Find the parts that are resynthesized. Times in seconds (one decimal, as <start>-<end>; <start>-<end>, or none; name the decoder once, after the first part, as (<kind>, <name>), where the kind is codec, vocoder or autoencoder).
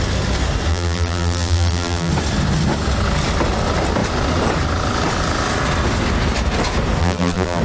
0.7-2.1 (vocoder, BigVGAN v2); 7.0-7.6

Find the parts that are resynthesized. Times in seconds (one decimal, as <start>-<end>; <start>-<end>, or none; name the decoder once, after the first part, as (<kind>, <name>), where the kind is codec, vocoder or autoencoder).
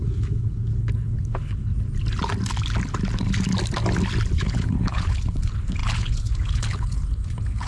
0.0-1.7 (codec, HILCodec); 4.4-7.7